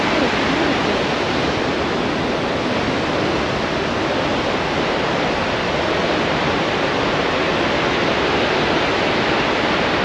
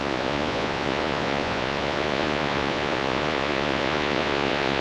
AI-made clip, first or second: second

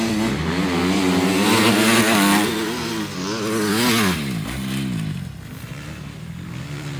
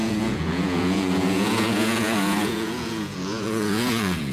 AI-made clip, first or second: second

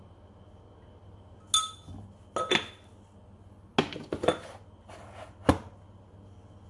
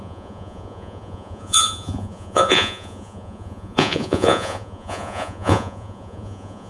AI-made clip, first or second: second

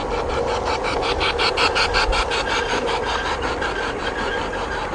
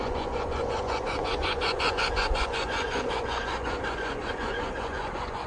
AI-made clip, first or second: second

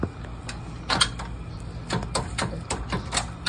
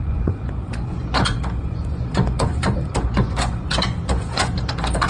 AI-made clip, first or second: second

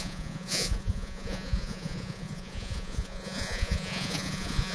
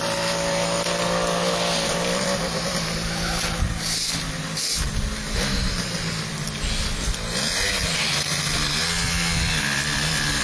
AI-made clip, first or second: first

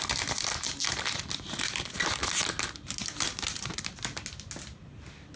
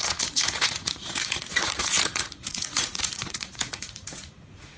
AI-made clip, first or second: second